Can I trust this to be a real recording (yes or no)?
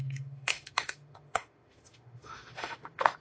no